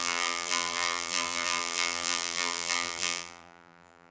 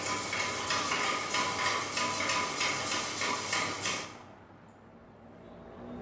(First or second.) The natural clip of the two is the second